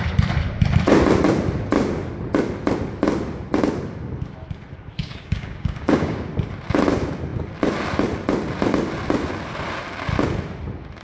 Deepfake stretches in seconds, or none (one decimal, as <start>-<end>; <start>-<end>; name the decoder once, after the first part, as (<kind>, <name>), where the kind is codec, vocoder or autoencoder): 5.0-6.3 (codec, DAC)

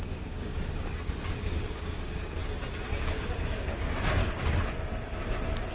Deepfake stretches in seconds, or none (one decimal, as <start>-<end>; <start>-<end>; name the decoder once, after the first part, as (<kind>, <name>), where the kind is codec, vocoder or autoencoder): 0.0-0.5 (codec, DAC); 1.3-2.4; 3.0-4.2

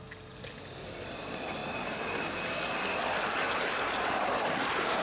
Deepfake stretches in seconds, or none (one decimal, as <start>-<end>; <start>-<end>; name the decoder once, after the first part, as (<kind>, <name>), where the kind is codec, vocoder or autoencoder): none

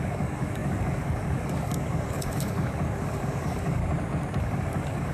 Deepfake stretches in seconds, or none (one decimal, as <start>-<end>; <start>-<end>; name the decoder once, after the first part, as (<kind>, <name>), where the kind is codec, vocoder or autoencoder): 0.0-3.8 (codec, DAC); 4.4-5.1

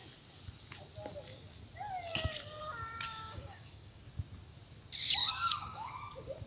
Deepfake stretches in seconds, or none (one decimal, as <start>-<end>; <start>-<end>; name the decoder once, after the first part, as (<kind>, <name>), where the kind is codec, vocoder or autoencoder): 3.1-4.0 (codec, DAC); 5.2-5.9

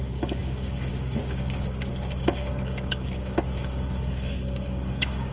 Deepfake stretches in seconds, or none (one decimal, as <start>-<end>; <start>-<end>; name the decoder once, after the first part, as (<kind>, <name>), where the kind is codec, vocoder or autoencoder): 0.0-5.3 (codec, DAC)

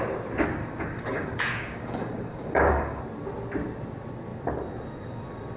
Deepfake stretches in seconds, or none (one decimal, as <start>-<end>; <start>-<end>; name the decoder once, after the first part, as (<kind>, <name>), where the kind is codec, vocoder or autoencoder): 0.6-3.0 (codec, DAC)